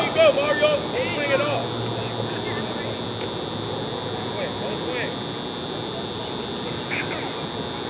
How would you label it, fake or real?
real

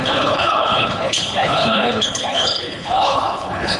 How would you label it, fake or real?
fake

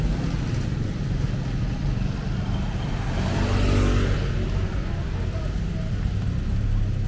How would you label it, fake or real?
real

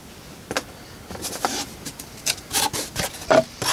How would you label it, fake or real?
real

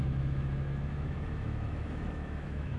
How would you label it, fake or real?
fake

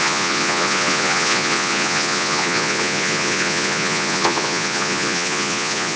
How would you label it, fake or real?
fake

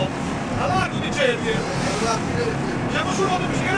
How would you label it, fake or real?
real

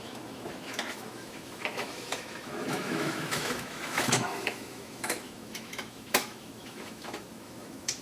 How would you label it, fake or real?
fake